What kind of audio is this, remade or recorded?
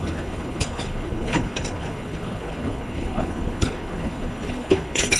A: remade